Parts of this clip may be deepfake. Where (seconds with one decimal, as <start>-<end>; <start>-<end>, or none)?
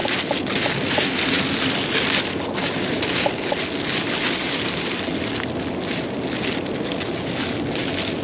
none